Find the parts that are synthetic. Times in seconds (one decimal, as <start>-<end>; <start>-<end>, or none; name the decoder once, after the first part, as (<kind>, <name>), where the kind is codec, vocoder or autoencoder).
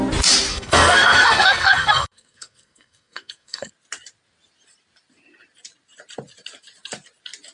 0.5-3.7 (codec, SNAC)